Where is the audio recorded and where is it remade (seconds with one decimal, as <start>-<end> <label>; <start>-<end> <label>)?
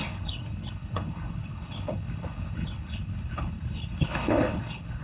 0.0-5.0 remade